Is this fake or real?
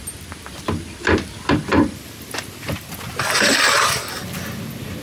real